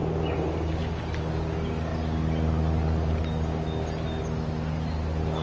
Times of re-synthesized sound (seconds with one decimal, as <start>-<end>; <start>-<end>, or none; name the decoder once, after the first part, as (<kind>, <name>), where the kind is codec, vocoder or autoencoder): none